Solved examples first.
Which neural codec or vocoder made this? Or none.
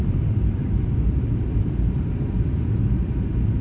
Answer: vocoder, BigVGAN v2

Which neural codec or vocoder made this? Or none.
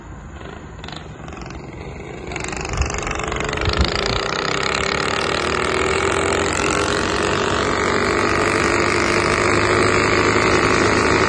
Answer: none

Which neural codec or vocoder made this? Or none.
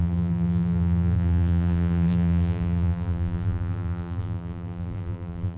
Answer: vocoder, BigVGAN v2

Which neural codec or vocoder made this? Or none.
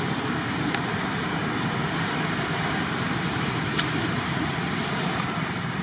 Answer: vocoder, BigVGAN v2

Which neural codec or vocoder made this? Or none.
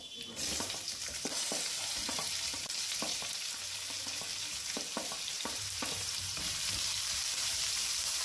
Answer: vocoder, BigVGAN v2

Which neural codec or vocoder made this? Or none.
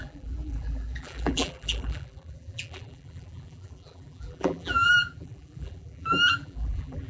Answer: vocoder, BigVGAN v2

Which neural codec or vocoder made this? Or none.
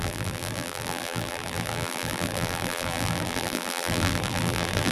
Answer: vocoder, BigVGAN v2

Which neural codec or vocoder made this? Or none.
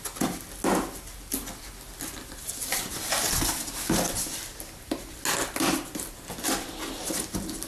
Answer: none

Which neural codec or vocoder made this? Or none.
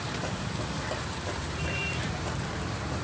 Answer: vocoder, BigVGAN v2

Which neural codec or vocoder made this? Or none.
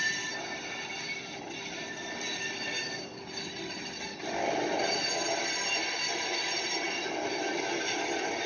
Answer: vocoder, BigVGAN v2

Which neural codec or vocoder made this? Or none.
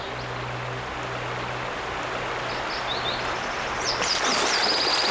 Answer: none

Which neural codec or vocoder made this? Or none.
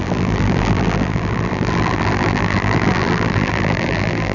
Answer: vocoder, BigVGAN v2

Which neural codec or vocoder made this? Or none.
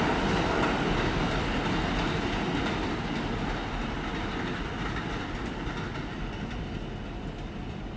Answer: none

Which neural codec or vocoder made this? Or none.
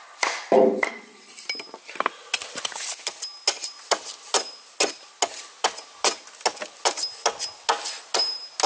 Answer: none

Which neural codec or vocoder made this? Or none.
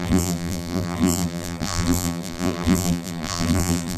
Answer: vocoder, BigVGAN v2